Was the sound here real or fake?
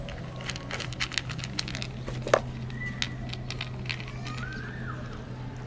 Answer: real